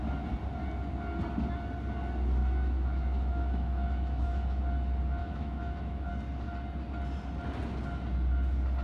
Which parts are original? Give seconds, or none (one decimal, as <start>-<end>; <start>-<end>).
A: 0.0-2.4; 4.6-5.2; 6.1-8.8